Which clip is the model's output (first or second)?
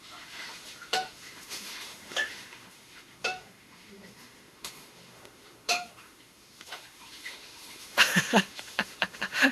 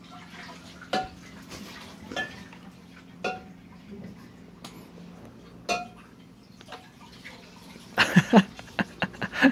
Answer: first